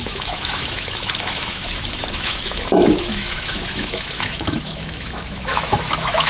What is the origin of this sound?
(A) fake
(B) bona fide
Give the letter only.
A